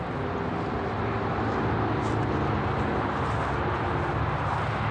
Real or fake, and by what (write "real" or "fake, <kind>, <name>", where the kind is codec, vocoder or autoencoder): real